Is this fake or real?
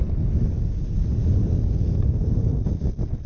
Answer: real